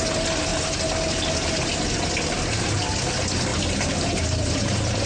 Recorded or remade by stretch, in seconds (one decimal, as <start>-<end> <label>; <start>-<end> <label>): 0.0-3.5 recorded; 3.5-5.1 remade